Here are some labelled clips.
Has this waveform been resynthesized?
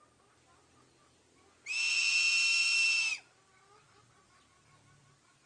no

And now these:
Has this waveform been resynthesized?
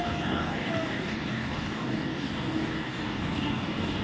yes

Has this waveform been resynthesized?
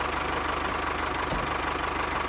no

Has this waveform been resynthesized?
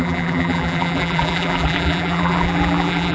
yes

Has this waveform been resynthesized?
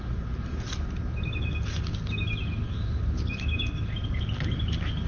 no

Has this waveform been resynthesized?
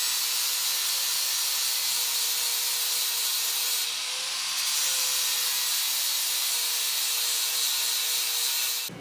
no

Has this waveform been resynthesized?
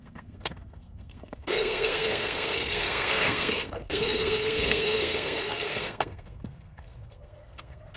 yes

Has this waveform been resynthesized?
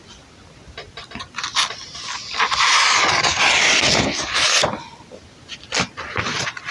no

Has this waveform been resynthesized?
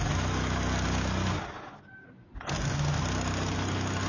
no